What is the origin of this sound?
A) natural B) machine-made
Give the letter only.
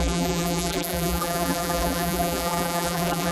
B